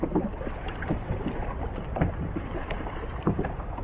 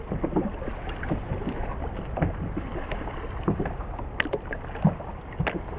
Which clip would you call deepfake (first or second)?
first